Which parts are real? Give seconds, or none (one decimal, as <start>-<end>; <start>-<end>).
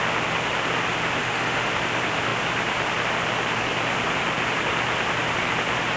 0.0-1.2; 1.7-6.0